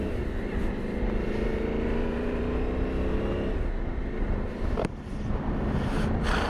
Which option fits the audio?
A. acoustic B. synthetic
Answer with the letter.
B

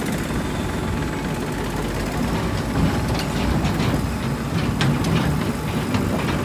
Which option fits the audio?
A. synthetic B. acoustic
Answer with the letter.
B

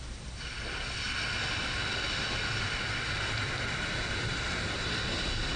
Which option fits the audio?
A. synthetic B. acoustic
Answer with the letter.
B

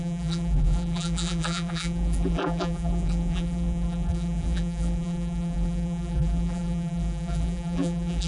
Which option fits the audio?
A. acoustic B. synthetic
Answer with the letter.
B